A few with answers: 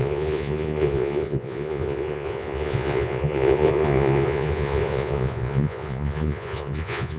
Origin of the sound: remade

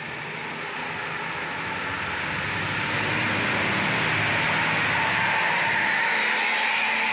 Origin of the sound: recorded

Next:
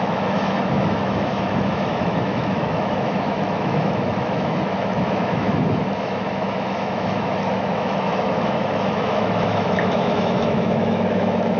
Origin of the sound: remade